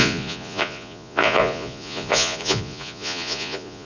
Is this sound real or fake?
fake